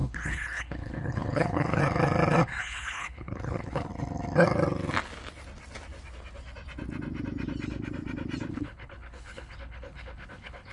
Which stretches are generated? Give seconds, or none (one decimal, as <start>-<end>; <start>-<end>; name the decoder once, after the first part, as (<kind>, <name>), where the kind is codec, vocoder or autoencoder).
0.0-1.8 (codec, HILCodec); 2.6-3.9; 8.5-10.7